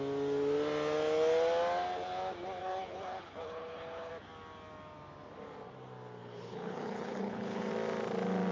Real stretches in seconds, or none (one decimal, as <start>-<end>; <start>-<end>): 0.0-2.6; 4.1-6.2; 7.7-8.5